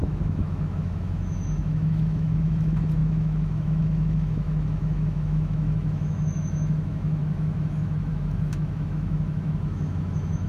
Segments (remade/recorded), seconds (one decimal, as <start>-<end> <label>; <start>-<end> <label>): 0.0-10.5 remade